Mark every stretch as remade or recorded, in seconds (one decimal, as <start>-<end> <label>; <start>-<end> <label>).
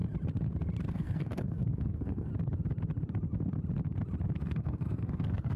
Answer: 0.0-0.9 recorded; 0.9-2.3 remade; 2.3-4.4 recorded; 4.4-5.6 remade